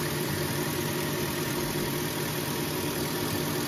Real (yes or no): no